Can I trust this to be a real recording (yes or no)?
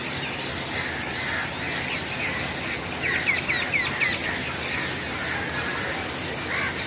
yes